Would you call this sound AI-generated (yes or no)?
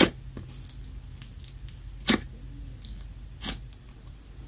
no